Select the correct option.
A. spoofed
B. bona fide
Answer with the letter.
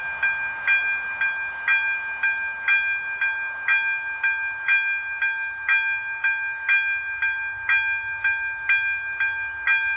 B